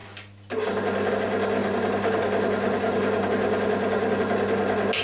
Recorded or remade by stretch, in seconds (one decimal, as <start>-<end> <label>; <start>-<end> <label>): 0.0-5.0 recorded